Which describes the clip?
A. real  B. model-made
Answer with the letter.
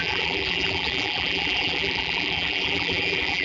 B